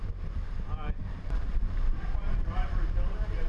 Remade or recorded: remade